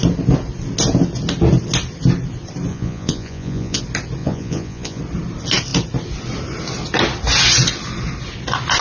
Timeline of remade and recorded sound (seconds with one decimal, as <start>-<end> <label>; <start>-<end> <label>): 0.0-2.7 recorded; 2.7-3.8 remade; 3.8-4.2 recorded; 4.2-5.0 remade; 5.0-8.8 recorded